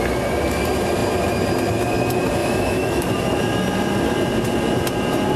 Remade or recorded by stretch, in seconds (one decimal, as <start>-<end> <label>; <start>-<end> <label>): 0.0-2.4 recorded; 2.4-3.0 remade; 3.0-5.4 recorded